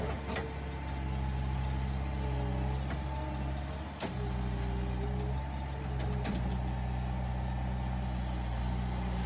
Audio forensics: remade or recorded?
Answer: recorded